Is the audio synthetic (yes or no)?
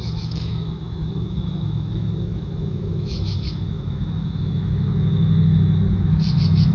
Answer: yes